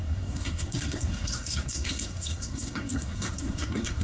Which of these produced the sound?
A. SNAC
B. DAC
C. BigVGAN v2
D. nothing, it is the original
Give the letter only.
A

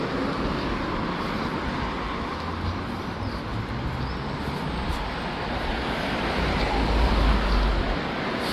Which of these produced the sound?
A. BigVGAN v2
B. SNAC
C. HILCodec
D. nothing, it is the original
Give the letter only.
D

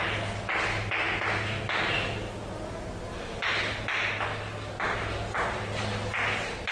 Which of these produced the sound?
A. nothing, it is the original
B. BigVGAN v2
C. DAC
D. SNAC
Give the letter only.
A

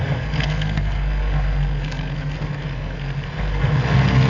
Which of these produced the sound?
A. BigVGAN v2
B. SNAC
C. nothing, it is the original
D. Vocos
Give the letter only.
B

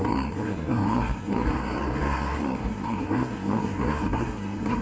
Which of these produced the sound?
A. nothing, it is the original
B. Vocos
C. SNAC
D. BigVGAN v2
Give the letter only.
C